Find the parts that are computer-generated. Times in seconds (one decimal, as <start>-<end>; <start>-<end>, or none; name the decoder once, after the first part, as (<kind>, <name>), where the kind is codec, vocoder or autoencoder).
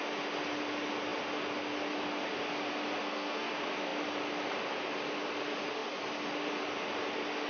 3.0-3.5 (codec, SNAC)